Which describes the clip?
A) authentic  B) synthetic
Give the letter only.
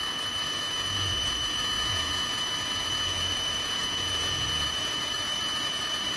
B